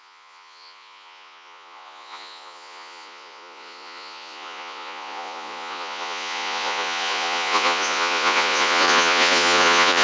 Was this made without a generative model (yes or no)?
no